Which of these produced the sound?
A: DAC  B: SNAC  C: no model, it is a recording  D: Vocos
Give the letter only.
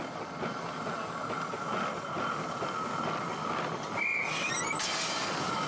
C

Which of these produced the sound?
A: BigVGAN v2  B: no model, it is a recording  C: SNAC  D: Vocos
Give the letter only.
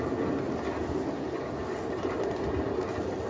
B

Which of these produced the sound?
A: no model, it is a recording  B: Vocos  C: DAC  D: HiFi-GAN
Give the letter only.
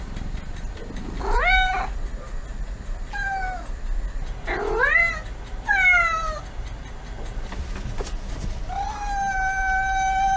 A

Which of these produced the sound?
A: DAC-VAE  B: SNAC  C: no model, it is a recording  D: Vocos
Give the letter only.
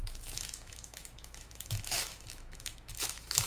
A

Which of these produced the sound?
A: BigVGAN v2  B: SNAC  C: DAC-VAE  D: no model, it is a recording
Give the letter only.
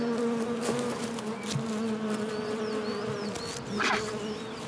D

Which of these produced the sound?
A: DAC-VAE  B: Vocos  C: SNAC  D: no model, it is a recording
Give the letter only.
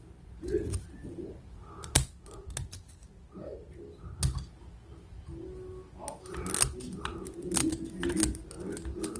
D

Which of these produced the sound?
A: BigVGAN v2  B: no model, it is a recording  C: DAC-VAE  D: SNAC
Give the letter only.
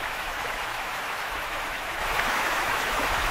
C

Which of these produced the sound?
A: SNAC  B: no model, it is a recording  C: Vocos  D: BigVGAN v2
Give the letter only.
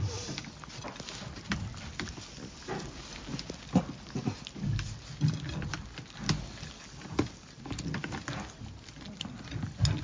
B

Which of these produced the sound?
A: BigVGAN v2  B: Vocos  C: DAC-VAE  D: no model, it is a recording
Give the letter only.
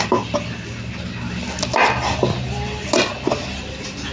D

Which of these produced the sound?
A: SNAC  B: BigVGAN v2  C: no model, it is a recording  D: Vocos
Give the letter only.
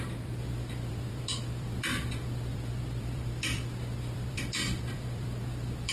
B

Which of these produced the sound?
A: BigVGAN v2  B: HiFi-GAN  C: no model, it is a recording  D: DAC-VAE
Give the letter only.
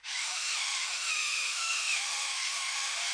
D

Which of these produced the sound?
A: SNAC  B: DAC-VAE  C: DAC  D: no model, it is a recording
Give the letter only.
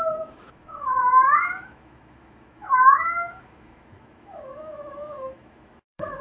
B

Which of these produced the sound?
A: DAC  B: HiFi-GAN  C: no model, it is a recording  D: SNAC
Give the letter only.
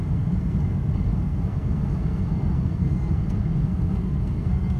D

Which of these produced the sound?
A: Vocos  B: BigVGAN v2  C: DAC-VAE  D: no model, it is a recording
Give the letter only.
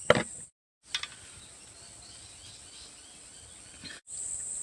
D